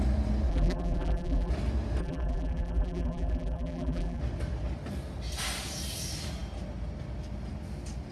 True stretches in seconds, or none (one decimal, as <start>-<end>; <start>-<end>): 0.0-0.5; 1.5-2.0; 4.2-8.1